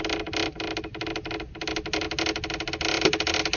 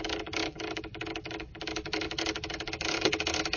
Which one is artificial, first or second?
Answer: second